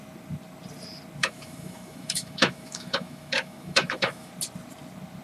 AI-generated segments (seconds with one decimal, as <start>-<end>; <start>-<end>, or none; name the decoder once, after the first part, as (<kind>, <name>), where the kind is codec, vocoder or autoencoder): 1.2-4.3 (autoencoder, DAC-VAE)